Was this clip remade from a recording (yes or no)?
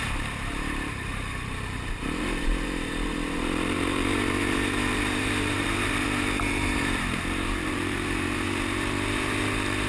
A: yes